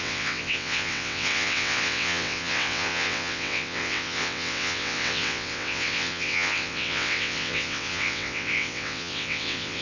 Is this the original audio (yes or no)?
no